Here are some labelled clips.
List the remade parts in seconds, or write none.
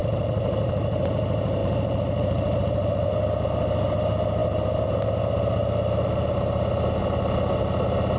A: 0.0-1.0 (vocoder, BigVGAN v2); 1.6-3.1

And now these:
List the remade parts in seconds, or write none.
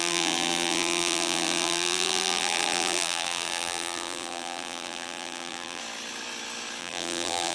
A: 0.0-5.8 (vocoder, BigVGAN v2); 6.8-7.5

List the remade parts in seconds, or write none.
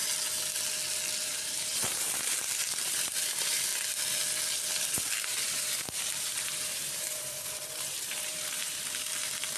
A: 1.2-3.7 (vocoder, BigVGAN v2); 4.9-9.6